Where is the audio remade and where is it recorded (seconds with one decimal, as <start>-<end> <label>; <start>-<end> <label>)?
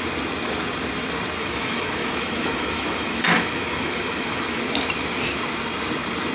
0.0-1.4 recorded; 1.4-4.6 remade; 4.6-6.3 recorded